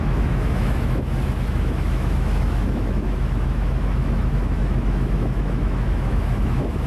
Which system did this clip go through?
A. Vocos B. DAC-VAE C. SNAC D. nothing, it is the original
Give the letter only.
B